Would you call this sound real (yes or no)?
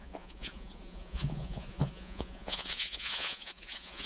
no